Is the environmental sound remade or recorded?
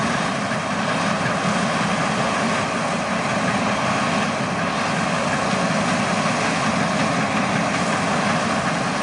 recorded